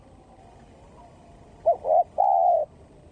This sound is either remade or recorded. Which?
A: recorded